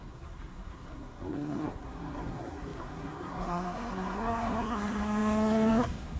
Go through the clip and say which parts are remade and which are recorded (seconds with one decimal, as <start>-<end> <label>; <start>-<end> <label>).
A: 0.0-6.2 remade